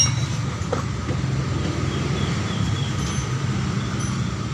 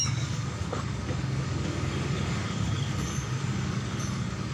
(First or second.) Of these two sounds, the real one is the first